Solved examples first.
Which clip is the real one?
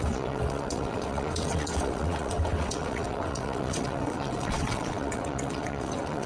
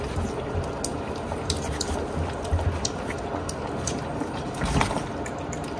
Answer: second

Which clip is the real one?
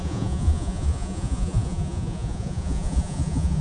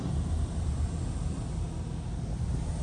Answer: second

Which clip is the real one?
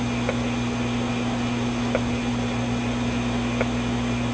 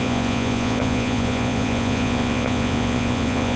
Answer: first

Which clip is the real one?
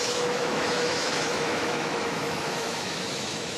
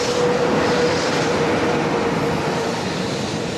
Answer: second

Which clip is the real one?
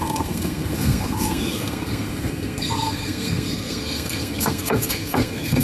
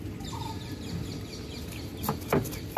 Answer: second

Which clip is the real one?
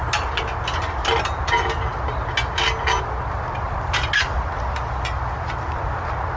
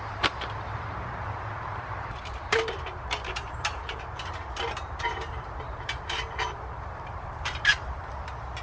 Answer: first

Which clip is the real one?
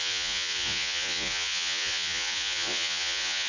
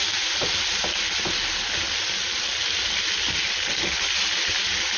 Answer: second